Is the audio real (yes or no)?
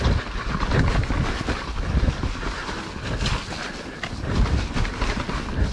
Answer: yes